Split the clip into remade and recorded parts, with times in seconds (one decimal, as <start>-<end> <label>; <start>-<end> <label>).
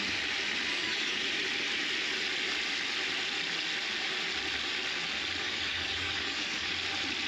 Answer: 0.0-0.7 recorded; 0.7-1.2 remade; 1.2-5.4 recorded; 5.4-6.7 remade; 6.7-7.3 recorded